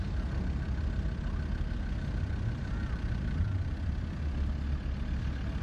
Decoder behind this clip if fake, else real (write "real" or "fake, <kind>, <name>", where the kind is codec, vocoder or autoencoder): real